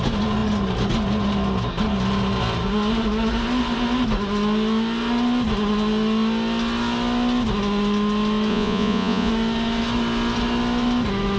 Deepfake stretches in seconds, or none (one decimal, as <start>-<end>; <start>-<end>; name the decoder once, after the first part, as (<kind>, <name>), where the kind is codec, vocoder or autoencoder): 8.5-9.3 (vocoder, Vocos)